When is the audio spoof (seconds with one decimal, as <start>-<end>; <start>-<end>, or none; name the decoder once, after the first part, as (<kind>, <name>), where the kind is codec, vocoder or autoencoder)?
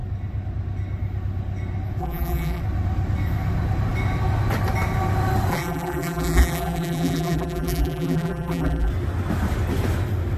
2.0-2.6 (vocoder, BigVGAN v2); 5.5-8.9